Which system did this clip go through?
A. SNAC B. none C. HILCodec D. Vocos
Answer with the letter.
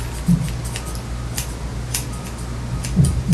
B